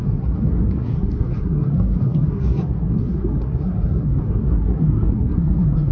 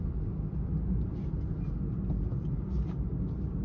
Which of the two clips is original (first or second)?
second